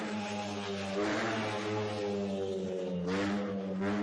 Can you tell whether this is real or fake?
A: real